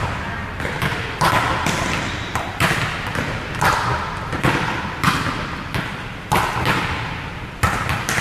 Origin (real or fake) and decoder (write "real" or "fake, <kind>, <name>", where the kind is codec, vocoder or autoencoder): real